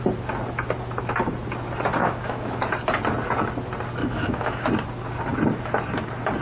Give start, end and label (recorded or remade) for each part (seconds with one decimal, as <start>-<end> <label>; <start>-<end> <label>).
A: 0.0-2.0 recorded; 2.0-2.6 remade; 2.6-4.0 recorded; 4.0-4.7 remade; 4.7-6.4 recorded